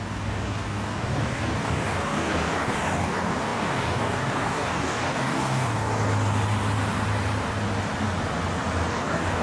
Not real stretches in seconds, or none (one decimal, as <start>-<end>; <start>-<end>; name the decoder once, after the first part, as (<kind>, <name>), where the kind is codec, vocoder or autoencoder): 0.0-5.9 (codec, DAC); 8.9-9.4